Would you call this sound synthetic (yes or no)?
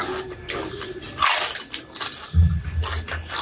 no